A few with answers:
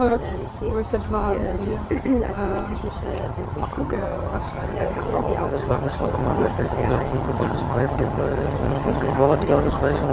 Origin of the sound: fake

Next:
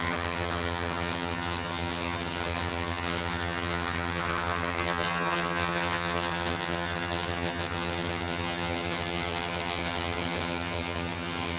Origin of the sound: fake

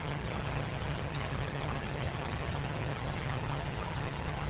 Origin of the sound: fake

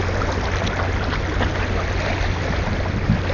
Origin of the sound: real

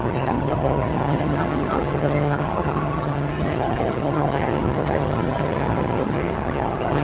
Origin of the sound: fake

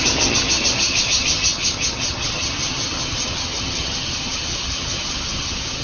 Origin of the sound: fake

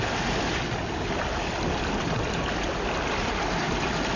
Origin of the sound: real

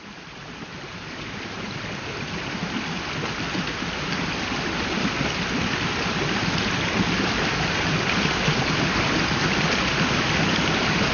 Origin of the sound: real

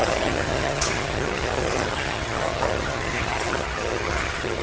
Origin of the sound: fake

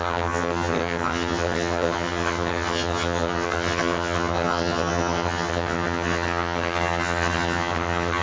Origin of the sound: fake